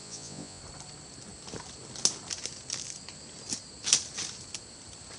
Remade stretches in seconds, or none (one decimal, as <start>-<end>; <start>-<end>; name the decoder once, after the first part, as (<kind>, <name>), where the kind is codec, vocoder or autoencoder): 0.0-0.6 (vocoder, Vocos)